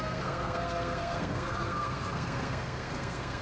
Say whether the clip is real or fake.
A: fake